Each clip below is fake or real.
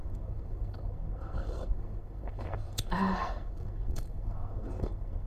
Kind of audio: fake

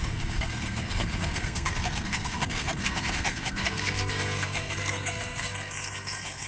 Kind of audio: fake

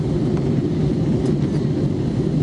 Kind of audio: real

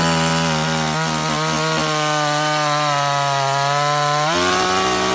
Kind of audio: real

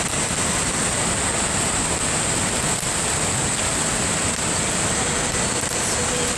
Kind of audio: real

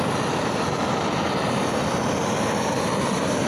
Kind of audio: real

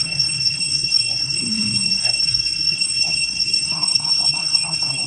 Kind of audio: fake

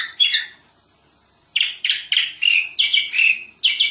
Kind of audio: real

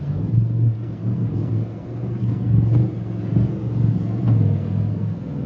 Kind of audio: fake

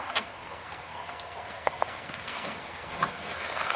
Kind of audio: fake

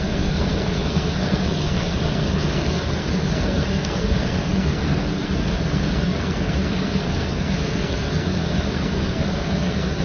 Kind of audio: fake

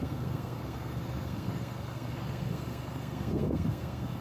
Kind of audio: fake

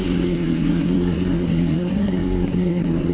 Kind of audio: fake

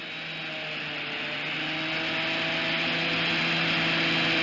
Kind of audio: real